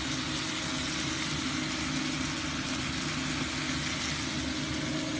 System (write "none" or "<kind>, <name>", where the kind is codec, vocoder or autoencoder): none